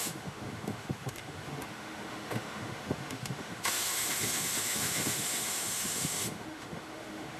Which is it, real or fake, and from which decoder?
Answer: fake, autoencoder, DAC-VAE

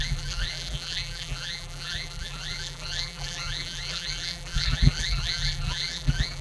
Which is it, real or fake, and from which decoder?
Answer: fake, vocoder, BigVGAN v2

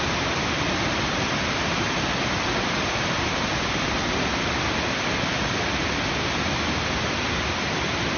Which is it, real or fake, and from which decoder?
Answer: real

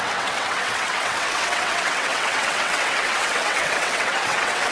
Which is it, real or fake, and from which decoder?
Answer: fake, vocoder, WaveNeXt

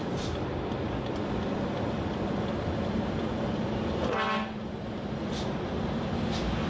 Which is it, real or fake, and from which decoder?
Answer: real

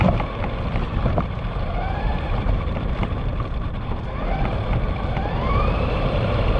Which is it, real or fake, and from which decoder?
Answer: fake, vocoder, BigVGAN v2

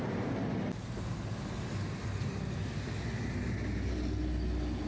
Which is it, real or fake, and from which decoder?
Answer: real